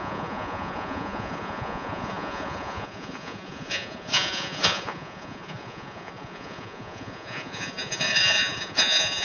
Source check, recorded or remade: remade